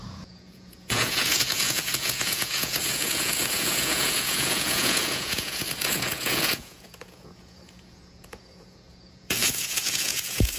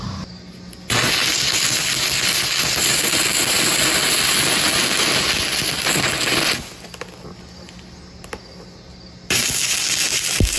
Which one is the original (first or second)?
second